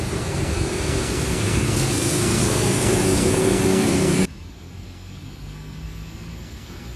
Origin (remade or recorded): remade